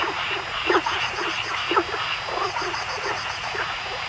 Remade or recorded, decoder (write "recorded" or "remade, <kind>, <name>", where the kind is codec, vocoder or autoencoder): remade, vocoder, Vocos